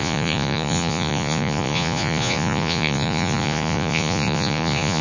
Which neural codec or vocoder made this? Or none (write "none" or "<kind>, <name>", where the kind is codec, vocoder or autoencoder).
vocoder, Vocos